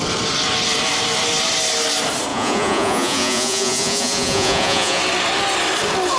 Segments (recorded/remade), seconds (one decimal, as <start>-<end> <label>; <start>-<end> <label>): 0.0-2.3 recorded; 2.3-5.0 remade; 5.0-6.2 recorded